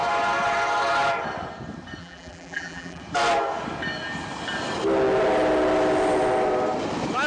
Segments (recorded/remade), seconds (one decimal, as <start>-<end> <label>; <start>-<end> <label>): 0.0-2.0 recorded; 2.0-3.0 remade; 3.0-7.3 recorded